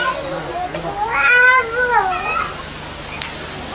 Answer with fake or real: real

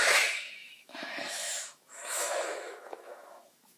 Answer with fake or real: fake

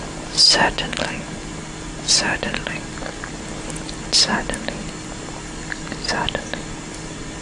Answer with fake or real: real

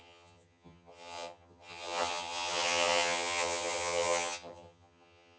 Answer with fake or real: fake